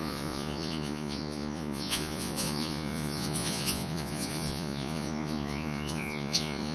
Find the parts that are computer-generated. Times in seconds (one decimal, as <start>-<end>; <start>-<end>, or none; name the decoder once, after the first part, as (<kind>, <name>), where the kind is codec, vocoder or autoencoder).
0.0-6.7 (vocoder, Vocos)